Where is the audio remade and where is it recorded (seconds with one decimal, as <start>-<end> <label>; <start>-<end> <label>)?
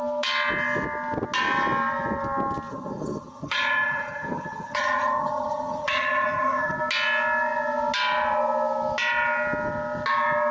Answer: 0.0-2.7 recorded; 2.7-6.8 remade; 6.8-10.5 recorded